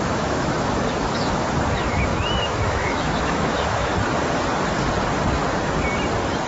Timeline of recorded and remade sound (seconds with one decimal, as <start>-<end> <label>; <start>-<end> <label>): 0.0-3.9 remade; 3.9-6.5 recorded